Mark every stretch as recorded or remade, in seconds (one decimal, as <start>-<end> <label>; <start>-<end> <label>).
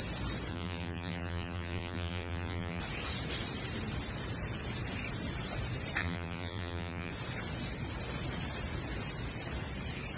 0.0-0.5 recorded; 0.5-2.8 remade; 2.8-6.0 recorded; 6.0-7.1 remade; 7.1-10.2 recorded